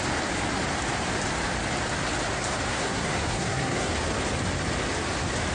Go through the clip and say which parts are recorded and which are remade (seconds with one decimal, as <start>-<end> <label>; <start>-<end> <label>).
0.0-2.7 recorded; 2.7-3.9 remade; 3.9-5.5 recorded